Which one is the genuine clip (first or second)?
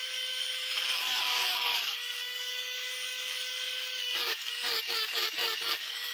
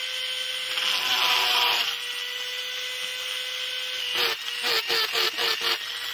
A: second